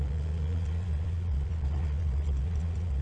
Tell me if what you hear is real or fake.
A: fake